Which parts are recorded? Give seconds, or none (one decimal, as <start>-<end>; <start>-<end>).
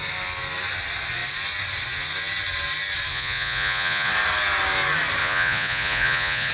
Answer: 0.0-3.1; 4.1-5.2